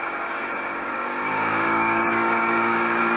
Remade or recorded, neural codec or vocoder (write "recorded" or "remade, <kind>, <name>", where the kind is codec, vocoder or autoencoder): remade, codec, DAC